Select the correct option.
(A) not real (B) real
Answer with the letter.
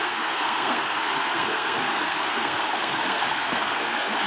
A